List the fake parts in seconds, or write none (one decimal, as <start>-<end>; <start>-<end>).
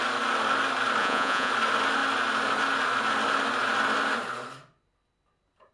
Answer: 1.0-1.5